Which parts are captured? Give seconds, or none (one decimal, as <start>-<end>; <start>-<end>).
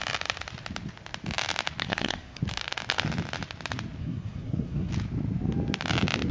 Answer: 0.0-1.8; 2.4-4.0; 4.9-6.3